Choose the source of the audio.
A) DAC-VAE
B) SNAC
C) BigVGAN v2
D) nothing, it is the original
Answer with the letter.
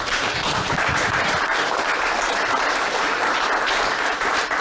C